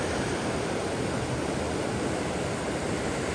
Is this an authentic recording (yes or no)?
no